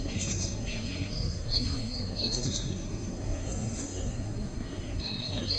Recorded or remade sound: remade